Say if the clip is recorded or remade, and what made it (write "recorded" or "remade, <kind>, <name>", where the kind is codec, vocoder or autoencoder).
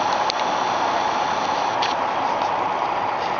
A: remade, vocoder, BigVGAN v2